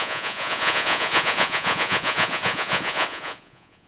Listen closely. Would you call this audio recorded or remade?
remade